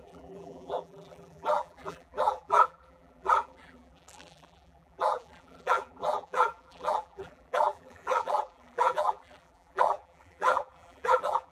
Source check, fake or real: fake